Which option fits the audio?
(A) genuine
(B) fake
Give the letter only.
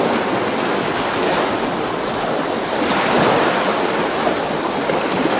A